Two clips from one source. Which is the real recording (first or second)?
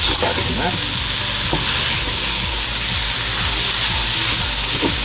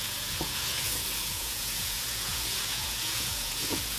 first